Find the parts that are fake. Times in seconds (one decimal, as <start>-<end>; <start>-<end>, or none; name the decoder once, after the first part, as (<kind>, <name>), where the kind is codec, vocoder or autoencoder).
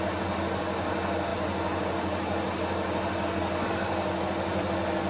none